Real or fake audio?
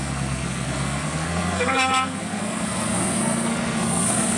fake